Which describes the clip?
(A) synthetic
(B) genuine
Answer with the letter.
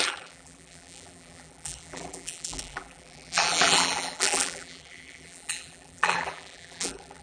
A